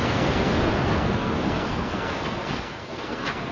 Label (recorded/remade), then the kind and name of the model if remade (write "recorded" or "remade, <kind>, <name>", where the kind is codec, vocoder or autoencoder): remade, codec, SNAC